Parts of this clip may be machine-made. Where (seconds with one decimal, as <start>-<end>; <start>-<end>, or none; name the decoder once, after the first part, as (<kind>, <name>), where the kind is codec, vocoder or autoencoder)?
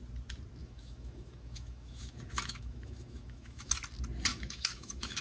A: 0.6-3.7 (autoencoder, DAC-VAE); 4.3-5.2